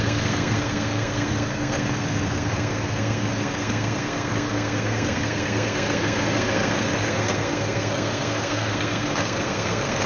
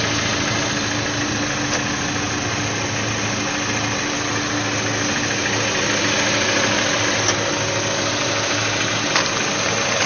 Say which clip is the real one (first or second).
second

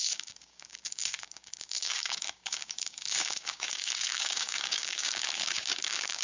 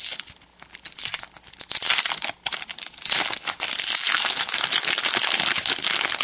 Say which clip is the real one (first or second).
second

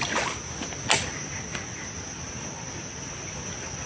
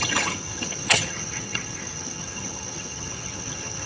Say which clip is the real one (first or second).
first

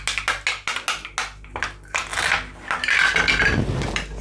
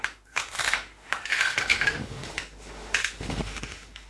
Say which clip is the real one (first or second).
first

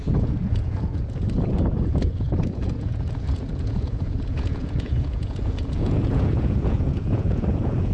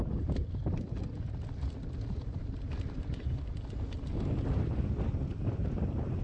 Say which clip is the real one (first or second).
second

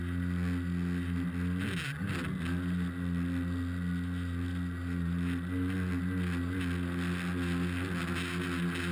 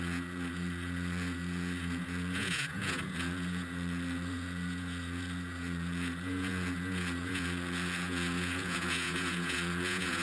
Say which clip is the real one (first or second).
first